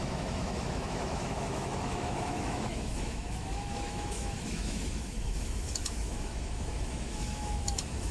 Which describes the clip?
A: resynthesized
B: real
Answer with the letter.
A